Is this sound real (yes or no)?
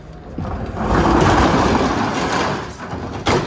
yes